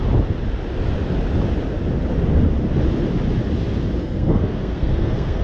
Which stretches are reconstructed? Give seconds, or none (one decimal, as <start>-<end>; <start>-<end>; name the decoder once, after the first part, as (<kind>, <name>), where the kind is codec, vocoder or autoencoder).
4.0-5.4 (codec, SNAC)